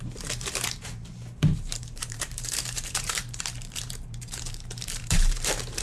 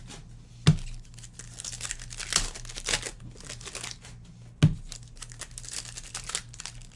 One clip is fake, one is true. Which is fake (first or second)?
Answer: first